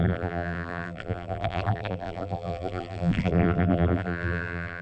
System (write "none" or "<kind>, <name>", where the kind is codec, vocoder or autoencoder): vocoder, BigVGAN v2